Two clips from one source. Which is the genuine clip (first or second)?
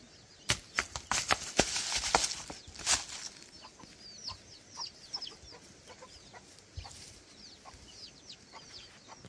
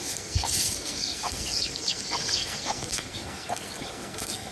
first